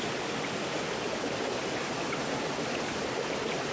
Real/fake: real